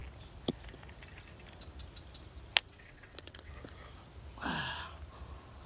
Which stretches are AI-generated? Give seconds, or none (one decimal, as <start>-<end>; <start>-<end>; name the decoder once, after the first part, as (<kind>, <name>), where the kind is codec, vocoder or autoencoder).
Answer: 2.6-3.5 (vocoder, WaveNeXt)